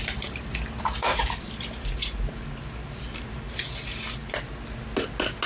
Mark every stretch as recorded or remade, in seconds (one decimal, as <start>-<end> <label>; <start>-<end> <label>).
0.0-1.1 recorded; 1.1-4.3 remade; 4.3-5.5 recorded